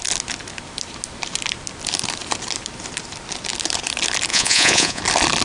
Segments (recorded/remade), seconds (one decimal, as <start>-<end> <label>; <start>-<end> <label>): 0.0-4.3 recorded; 4.3-5.0 remade; 5.0-5.4 recorded